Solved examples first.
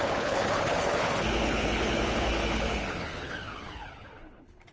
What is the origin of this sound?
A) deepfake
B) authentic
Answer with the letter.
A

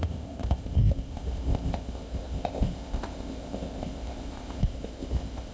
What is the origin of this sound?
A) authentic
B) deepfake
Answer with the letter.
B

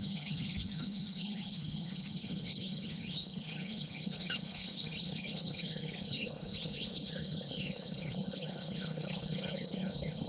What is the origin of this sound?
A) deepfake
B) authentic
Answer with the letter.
A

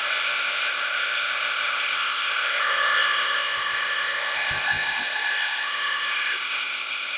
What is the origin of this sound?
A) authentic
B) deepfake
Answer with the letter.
B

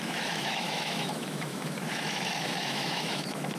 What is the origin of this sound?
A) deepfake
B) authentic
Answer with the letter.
A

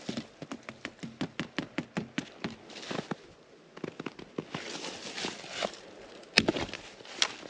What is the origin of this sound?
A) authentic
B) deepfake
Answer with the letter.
A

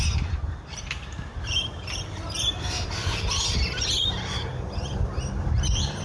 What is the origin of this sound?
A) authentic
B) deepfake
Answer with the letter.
B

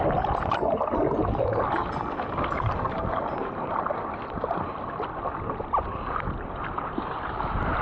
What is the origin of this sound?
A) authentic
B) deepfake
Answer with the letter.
A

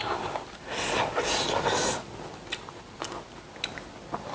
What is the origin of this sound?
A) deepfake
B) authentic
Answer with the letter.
B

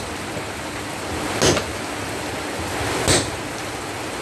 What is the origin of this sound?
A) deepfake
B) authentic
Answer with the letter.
B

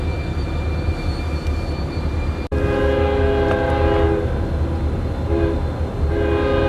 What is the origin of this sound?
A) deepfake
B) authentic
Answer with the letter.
B